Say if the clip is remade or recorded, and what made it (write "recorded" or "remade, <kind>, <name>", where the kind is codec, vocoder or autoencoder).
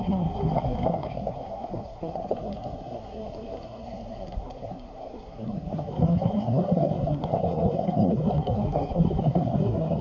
remade, codec, SNAC